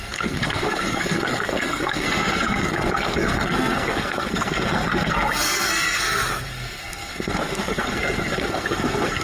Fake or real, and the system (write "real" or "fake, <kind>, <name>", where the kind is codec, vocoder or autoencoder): fake, codec, SNAC